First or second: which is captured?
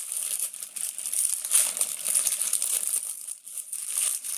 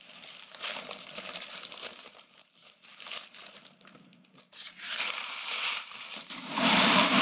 first